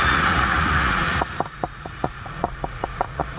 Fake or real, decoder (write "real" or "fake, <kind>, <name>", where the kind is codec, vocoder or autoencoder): fake, vocoder, Vocos